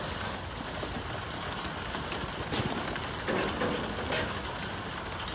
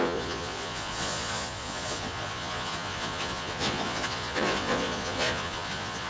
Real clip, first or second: first